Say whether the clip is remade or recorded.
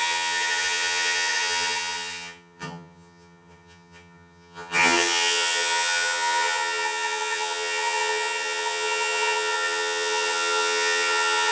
remade